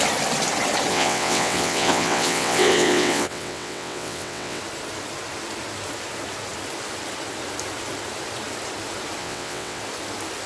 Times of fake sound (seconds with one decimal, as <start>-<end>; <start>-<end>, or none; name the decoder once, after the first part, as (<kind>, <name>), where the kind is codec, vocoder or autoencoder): 0.9-4.6 (vocoder, WaveNeXt); 9.2-9.8